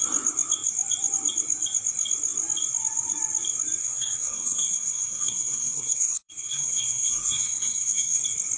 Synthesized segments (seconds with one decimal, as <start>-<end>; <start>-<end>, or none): 3.8-8.2